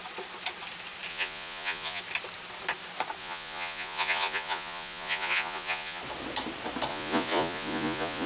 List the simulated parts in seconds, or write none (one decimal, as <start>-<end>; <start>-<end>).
1.1-2.0; 3.2-6.0; 6.9-8.3